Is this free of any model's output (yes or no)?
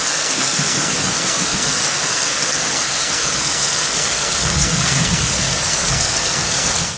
no